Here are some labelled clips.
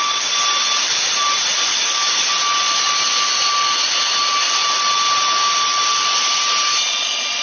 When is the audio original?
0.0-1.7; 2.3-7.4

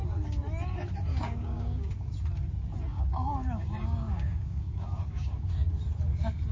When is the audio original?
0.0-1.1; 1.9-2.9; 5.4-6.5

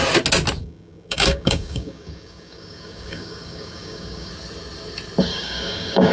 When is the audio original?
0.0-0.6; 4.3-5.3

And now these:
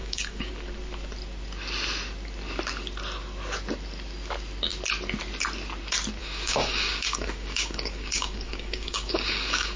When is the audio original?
0.5-6.2